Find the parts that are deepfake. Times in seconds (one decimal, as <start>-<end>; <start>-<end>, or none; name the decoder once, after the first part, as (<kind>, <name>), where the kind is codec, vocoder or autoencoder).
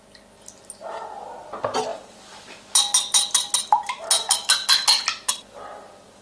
none